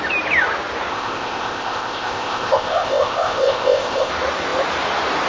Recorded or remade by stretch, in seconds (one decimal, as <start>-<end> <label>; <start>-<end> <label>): 0.0-0.9 recorded; 0.9-4.1 remade; 4.1-5.3 recorded

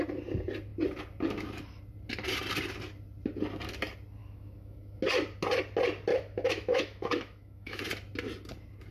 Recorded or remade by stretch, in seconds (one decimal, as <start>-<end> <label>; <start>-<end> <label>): 0.0-4.2 recorded; 4.2-5.0 remade; 5.0-6.1 recorded; 6.1-7.8 remade; 7.8-8.9 recorded